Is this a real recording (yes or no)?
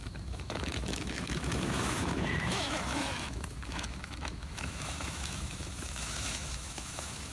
no